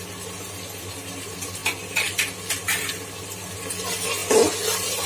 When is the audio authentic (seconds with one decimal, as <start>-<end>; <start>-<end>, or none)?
0.0-5.1